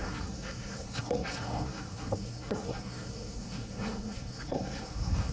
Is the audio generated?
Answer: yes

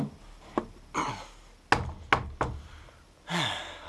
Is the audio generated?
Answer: no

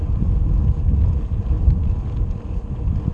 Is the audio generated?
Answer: no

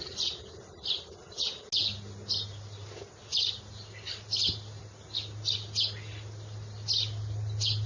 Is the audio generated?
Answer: no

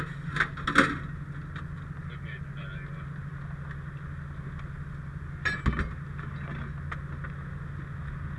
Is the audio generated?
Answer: no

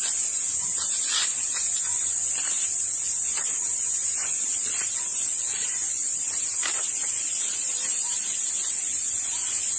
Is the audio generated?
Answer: no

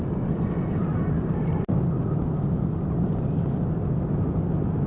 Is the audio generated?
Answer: no